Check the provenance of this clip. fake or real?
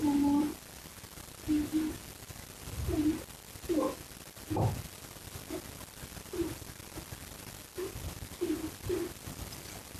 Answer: real